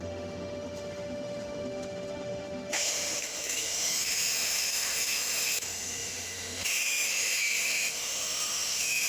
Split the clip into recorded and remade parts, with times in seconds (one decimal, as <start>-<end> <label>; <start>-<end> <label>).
0.0-9.1 remade